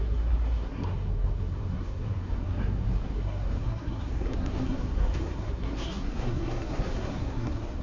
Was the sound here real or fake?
fake